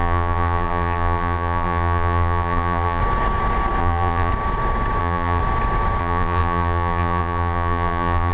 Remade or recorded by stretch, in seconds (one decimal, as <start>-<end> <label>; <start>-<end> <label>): 0.0-3.0 remade; 3.0-3.8 recorded; 3.8-4.3 remade; 4.3-5.0 recorded; 5.0-5.4 remade; 5.4-6.0 recorded; 6.0-8.3 remade